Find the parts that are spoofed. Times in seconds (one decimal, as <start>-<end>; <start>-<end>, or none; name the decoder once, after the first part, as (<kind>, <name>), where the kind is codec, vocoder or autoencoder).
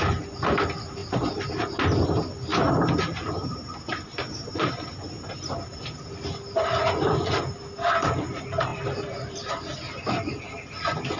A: 1.0-1.6 (vocoder, BigVGAN v2); 8.7-9.5